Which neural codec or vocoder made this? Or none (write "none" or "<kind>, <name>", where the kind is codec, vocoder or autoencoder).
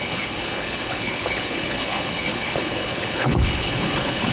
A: codec, HILCodec